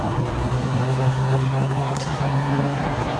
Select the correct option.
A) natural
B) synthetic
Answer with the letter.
B